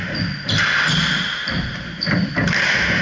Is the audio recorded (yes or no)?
yes